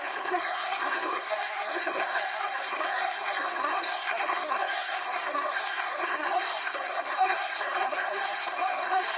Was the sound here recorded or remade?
remade